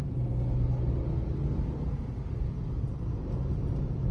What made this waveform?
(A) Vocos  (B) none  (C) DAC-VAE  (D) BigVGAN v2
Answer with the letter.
B